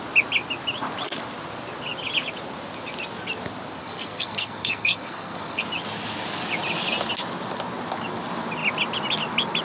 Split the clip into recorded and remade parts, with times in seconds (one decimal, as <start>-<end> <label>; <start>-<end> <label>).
0.0-3.8 recorded; 3.8-5.6 remade; 5.6-9.6 recorded